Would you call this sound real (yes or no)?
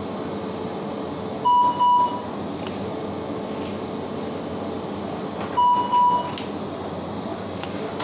yes